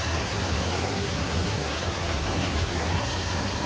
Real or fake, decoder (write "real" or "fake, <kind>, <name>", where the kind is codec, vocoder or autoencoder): fake, codec, SNAC